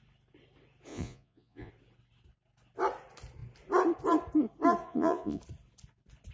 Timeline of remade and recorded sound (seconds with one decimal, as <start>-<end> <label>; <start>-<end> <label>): 0.0-0.9 recorded; 0.9-1.7 remade; 1.7-4.8 recorded; 4.8-5.4 remade; 5.4-6.3 recorded